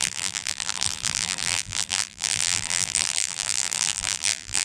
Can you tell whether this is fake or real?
fake